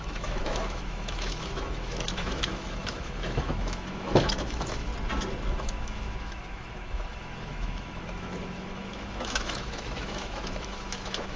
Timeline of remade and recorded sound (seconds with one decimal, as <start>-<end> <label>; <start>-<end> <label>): 0.0-4.9 remade; 4.9-5.5 recorded; 5.5-11.4 remade